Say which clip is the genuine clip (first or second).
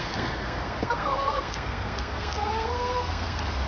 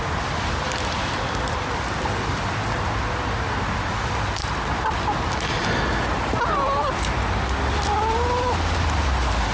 second